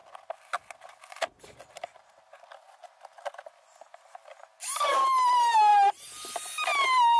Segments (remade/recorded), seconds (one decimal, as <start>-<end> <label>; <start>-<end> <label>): 0.0-7.2 recorded